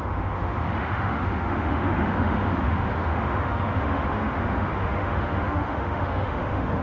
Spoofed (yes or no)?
yes